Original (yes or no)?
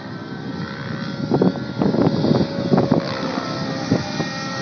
yes